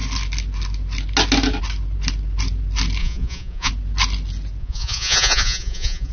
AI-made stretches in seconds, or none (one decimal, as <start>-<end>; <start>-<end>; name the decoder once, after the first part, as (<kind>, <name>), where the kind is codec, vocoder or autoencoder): 3.0-3.7 (vocoder, Vocos); 4.6-6.1